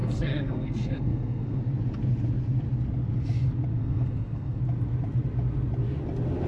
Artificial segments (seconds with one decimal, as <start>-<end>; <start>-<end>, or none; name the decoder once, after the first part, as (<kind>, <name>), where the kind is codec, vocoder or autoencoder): 0.0-1.6 (codec, SNAC); 3.8-4.6